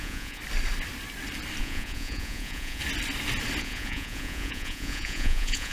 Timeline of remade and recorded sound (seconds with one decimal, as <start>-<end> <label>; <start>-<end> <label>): 0.0-0.4 remade; 0.4-1.6 recorded; 1.6-2.8 remade; 2.8-3.6 recorded; 3.6-5.7 remade